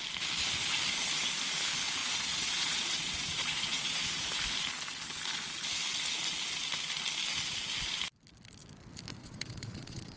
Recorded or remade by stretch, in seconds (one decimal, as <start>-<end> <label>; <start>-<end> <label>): 0.0-2.0 recorded; 2.0-4.3 remade; 4.3-9.2 recorded; 9.2-10.2 remade